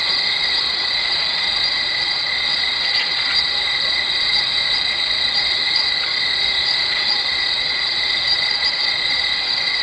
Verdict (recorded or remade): remade